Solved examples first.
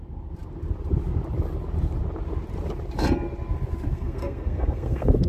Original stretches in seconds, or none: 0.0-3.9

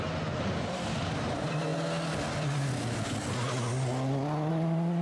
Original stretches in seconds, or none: 0.0-5.0

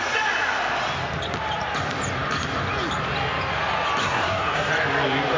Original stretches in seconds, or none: 0.0-4.0; 4.7-5.4

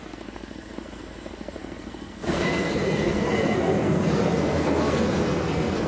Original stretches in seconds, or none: none

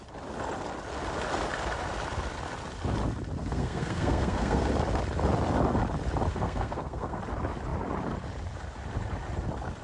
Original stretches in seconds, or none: 0.0-3.4; 4.7-6.3; 7.2-9.8